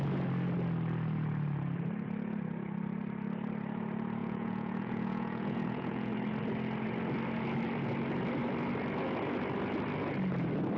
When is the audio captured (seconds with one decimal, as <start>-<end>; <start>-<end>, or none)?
0.0-4.2; 6.1-10.8